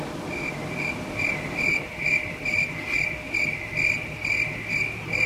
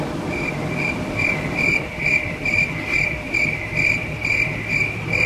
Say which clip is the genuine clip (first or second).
first